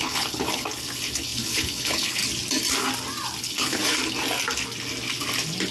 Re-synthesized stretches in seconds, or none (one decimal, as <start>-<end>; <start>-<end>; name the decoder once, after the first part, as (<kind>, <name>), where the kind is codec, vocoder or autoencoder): 0.0-2.2 (codec, HILCodec); 3.4-3.8